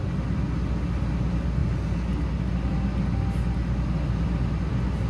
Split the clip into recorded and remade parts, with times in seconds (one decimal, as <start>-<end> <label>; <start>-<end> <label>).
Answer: 0.0-5.1 recorded